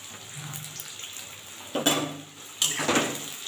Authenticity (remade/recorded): recorded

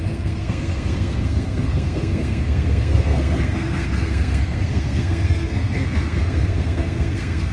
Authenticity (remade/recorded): remade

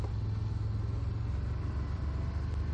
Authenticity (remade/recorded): recorded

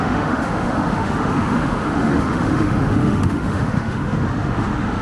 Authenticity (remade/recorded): remade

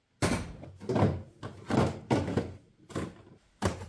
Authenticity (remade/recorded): recorded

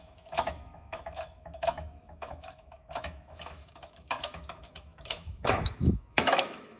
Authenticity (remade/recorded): remade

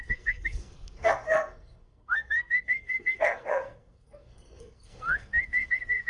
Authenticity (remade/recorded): remade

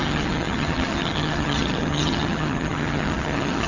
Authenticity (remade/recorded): remade